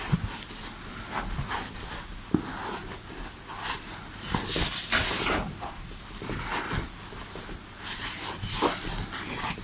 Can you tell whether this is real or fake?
real